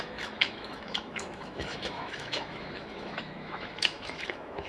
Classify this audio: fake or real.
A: fake